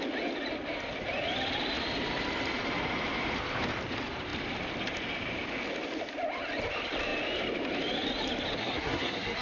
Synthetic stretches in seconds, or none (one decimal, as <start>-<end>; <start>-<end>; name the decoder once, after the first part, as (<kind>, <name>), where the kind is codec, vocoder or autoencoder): 8.6-9.4 (codec, SNAC)